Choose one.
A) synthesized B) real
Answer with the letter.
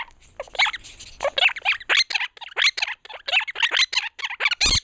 B